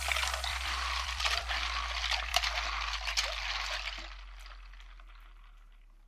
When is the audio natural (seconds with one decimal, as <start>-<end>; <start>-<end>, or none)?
0.0-0.5; 1.5-6.1